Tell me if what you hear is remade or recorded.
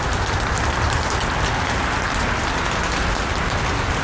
recorded